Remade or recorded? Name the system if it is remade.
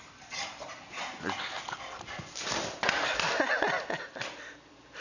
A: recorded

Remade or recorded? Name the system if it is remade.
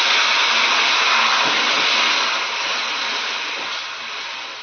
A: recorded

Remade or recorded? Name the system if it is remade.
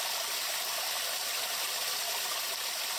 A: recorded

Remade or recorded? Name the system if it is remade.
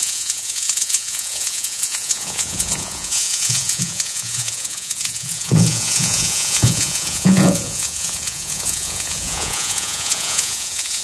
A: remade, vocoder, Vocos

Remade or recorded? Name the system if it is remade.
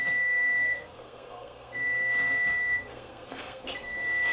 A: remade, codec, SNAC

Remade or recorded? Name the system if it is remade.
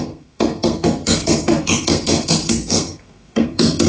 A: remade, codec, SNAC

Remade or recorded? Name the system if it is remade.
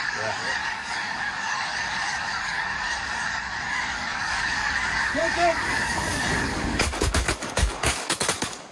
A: remade, codec, DAC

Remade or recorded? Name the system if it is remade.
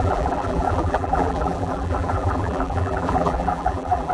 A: remade, vocoder, BigVGAN v2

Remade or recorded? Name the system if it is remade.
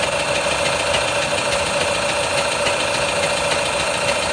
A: recorded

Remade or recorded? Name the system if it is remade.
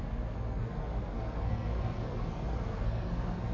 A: remade, codec, SNAC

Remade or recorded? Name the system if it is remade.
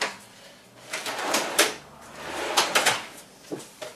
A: remade, vocoder, BigVGAN v2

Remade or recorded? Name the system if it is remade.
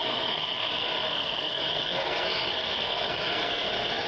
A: remade, codec, SNAC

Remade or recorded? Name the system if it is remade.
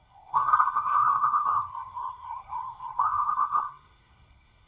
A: remade, codec, SNAC